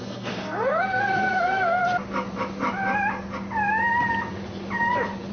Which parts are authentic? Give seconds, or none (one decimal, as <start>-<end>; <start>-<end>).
1.8-5.3